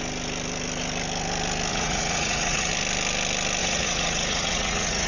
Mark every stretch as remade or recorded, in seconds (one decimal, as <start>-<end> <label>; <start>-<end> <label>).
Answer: 0.0-1.7 recorded; 1.7-2.7 remade; 2.7-3.6 recorded; 3.6-5.1 remade